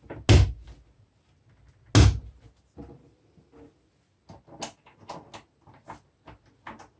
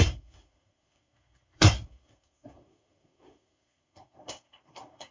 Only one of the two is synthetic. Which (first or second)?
second